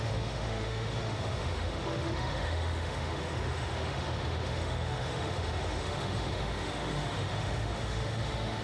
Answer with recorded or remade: remade